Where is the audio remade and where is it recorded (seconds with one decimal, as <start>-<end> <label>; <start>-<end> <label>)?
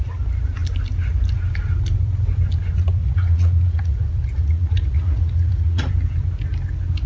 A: 0.0-3.0 recorded; 3.0-5.9 remade; 5.9-7.1 recorded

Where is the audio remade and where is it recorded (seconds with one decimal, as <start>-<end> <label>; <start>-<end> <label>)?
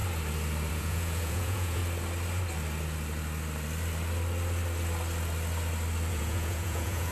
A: 0.0-0.7 recorded; 0.7-1.8 remade; 1.8-6.1 recorded; 6.1-7.1 remade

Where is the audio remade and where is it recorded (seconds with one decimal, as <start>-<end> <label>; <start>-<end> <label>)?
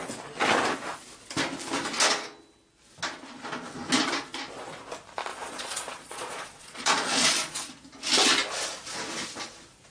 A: 0.0-5.3 recorded; 5.3-7.7 remade; 7.7-9.9 recorded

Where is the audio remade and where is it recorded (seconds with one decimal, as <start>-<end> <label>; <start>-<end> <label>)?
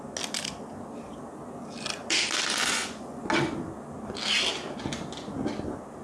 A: 0.0-2.6 recorded; 2.6-3.3 remade; 3.3-6.0 recorded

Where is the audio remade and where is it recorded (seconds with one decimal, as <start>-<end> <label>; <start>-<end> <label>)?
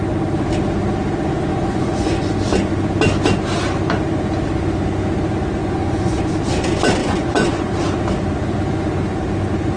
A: 0.0-1.5 recorded; 1.5-2.3 remade; 2.3-5.6 recorded; 5.6-6.3 remade; 6.3-7.0 recorded; 7.0-7.7 remade; 7.7-9.8 recorded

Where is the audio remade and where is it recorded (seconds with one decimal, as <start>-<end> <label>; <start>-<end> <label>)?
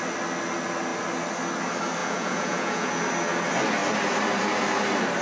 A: 0.0-2.0 recorded; 2.0-2.9 remade; 2.9-5.2 recorded